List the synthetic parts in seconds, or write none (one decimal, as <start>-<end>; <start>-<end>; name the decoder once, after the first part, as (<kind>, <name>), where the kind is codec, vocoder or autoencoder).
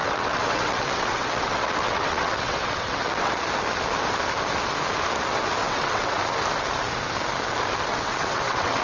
0.0-3.3 (vocoder, WaveNeXt); 5.6-6.2; 7.9-8.8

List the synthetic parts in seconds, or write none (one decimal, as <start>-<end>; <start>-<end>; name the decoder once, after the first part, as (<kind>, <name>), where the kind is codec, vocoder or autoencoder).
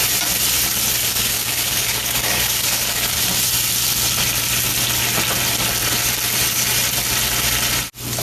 1.1-3.2 (codec, DAC)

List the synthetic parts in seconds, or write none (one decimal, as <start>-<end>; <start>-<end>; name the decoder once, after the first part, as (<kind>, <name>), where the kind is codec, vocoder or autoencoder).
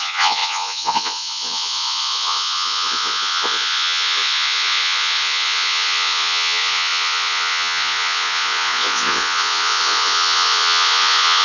0.0-11.4 (vocoder, Vocos)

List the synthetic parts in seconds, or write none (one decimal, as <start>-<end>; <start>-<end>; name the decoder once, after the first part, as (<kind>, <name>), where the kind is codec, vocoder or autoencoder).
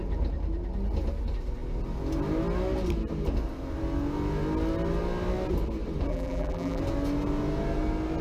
6.1-6.8 (vocoder, BigVGAN v2)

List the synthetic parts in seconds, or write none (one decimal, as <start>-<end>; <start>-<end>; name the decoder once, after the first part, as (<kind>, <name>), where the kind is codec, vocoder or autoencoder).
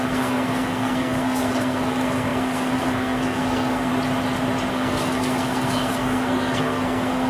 0.0-3.9 (codec, SNAC); 4.7-7.3